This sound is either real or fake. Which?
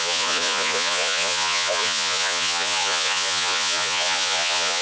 fake